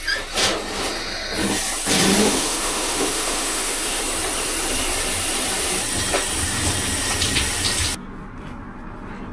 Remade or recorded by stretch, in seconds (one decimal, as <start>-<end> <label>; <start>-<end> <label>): 0.0-2.2 recorded; 2.2-4.0 remade; 4.0-9.3 recorded